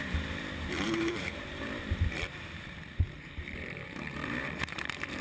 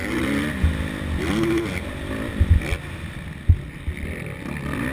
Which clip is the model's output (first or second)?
first